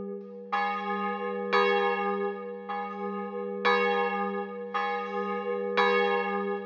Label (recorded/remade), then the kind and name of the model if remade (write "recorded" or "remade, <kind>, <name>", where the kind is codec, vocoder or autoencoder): recorded